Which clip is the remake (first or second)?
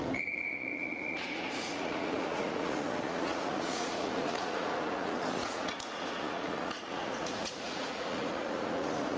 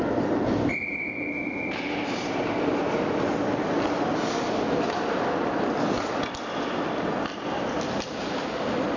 first